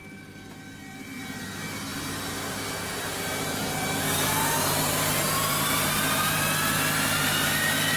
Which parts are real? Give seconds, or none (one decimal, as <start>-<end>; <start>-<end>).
0.0-1.9; 6.4-7.2